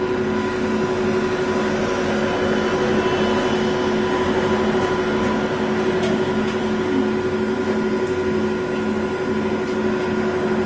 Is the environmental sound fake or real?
real